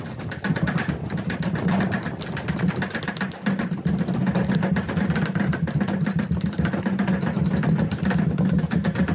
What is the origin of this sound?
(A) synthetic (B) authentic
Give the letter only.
B